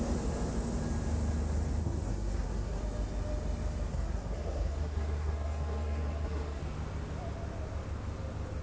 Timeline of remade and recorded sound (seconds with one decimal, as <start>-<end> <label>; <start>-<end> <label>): 0.0-1.8 recorded; 1.8-2.8 remade; 2.8-3.9 recorded; 3.9-6.6 remade; 6.6-8.6 recorded